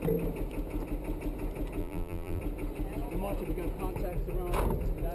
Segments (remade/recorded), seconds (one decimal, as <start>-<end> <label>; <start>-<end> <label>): 0.0-1.8 recorded; 1.8-2.4 remade; 2.4-5.1 recorded